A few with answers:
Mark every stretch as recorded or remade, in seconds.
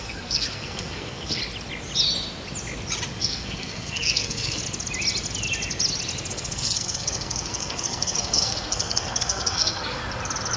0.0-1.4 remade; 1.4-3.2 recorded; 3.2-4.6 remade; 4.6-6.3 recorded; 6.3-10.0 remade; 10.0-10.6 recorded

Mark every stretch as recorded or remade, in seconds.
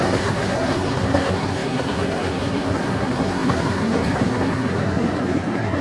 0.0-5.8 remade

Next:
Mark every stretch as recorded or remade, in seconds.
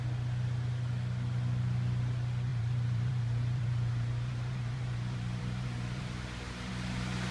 0.0-2.5 recorded; 2.5-6.7 remade; 6.7-7.3 recorded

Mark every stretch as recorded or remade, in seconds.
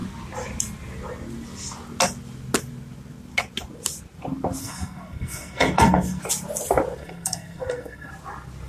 0.0-4.6 recorded; 4.6-6.2 remade; 6.2-7.0 recorded; 7.0-8.1 remade; 8.1-8.7 recorded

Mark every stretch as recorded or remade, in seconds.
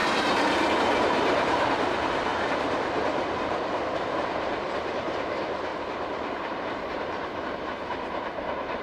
0.0-2.3 remade; 2.3-4.9 recorded; 4.9-5.7 remade; 5.7-6.4 recorded; 6.4-8.8 remade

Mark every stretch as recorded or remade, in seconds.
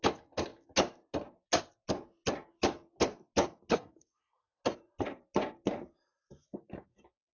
0.0-3.7 recorded; 3.7-4.6 remade; 4.6-7.3 recorded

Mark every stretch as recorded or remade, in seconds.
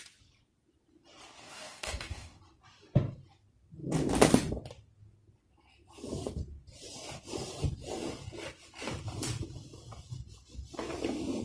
0.0-1.4 recorded; 1.4-2.4 remade; 2.4-11.4 recorded